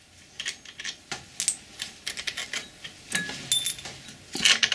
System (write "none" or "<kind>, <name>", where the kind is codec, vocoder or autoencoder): none